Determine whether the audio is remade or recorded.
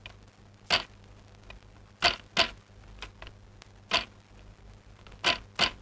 recorded